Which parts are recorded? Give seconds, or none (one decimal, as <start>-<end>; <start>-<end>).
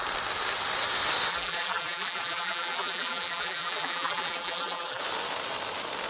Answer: 0.0-1.3; 5.0-6.1